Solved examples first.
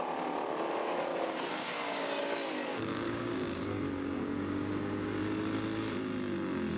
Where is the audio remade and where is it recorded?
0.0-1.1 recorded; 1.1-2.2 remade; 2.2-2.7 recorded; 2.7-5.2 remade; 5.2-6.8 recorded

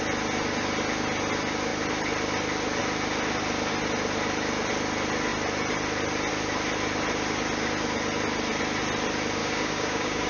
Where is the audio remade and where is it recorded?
0.0-9.4 recorded; 9.4-10.3 remade

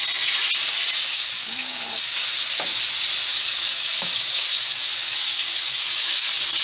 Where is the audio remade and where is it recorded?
0.0-1.1 recorded; 1.1-2.2 remade; 2.2-3.3 recorded; 3.3-6.6 remade